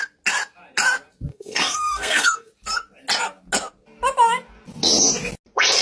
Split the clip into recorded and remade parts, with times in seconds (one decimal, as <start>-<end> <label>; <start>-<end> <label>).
0.0-1.3 recorded; 1.3-2.5 remade; 2.5-5.8 recorded